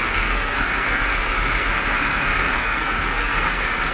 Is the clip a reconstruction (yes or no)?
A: yes